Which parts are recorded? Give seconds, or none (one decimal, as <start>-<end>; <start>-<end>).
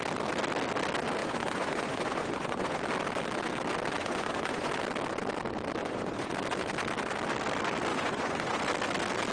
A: 0.0-1.2; 2.8-4.0; 4.7-5.8; 6.3-7.9; 8.6-9.3